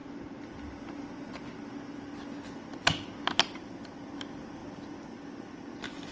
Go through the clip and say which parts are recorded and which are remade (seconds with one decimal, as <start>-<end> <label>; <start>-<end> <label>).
0.0-6.1 recorded